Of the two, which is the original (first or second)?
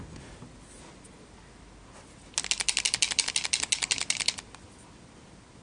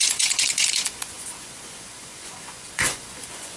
first